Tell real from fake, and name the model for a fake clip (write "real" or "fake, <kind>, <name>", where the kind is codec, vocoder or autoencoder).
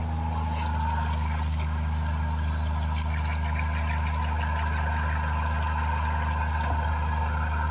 real